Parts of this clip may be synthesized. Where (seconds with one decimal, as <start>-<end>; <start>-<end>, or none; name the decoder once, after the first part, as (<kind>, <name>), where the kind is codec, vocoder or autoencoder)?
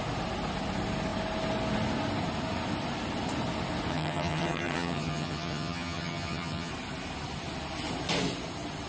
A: 3.9-6.7 (vocoder, HiFi-GAN)